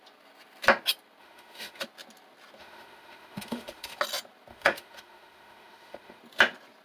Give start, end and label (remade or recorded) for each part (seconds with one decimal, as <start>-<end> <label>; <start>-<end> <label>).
0.0-1.2 recorded; 1.2-1.8 remade; 1.8-2.6 recorded; 2.6-4.0 remade; 4.0-4.5 recorded; 4.5-6.2 remade; 6.2-6.8 recorded